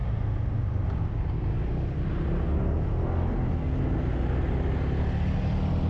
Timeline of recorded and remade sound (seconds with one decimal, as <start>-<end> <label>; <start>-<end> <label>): 0.0-5.9 recorded